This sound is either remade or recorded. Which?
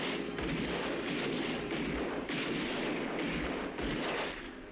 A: recorded